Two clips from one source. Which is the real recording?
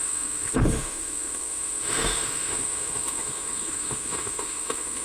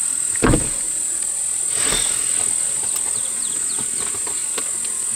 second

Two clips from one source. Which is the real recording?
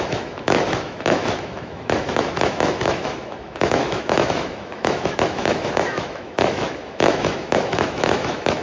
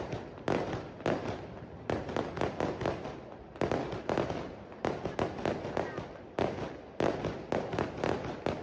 second